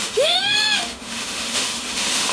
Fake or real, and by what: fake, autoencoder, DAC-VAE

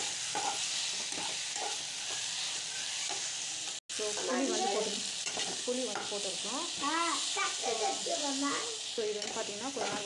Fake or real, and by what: real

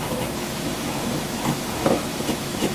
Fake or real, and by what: fake, autoencoder, DAC-VAE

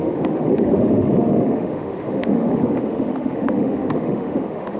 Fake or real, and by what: fake, autoencoder, DAC-VAE